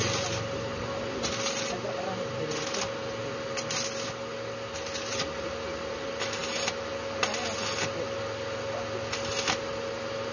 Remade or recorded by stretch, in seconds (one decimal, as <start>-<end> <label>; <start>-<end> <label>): 0.0-10.3 recorded